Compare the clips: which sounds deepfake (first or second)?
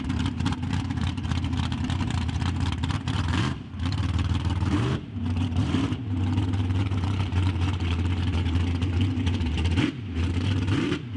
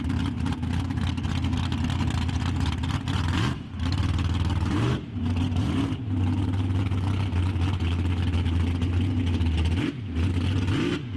first